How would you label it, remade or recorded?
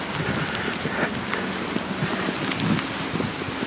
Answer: recorded